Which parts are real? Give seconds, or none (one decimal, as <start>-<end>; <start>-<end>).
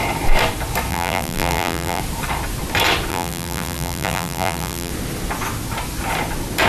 0.0-0.9; 2.0-3.1; 4.9-6.7